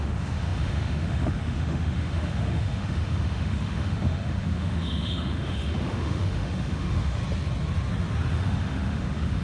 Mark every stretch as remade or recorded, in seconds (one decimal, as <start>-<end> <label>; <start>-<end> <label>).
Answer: 0.0-7.2 remade; 7.2-8.3 recorded; 8.3-9.4 remade